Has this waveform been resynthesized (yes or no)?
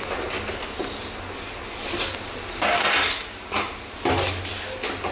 no